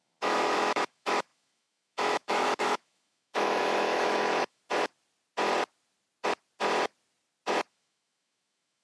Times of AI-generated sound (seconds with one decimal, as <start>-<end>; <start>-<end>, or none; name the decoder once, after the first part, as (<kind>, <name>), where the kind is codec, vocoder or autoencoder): 0.0-4.6 (autoencoder, DAC-VAE); 7.7-8.8